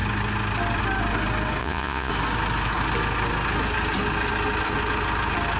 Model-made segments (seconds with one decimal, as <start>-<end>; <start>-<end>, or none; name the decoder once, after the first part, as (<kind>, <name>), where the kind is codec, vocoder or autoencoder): 1.6-2.1 (vocoder, Vocos)